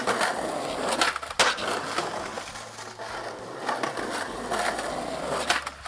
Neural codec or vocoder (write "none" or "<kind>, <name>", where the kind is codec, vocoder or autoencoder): none